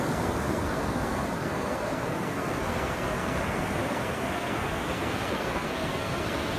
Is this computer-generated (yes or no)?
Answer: yes